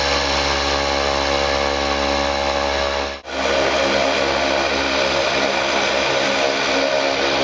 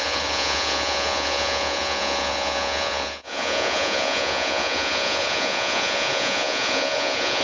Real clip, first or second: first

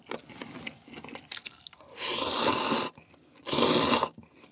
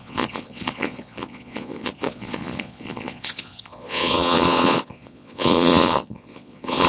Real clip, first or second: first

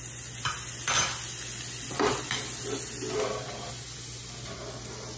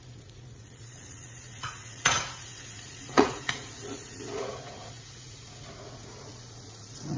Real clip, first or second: first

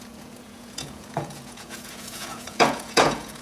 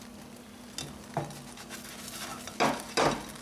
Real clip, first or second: second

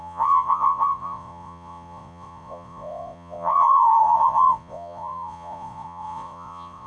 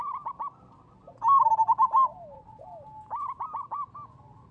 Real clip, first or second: second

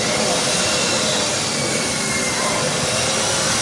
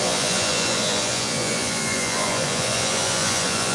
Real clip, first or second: first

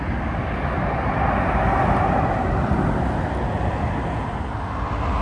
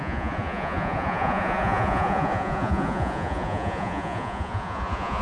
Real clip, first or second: first